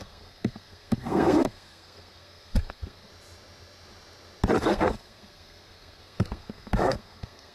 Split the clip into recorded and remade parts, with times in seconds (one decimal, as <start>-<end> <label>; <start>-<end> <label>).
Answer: 0.0-3.1 remade; 3.1-4.6 recorded; 4.6-7.5 remade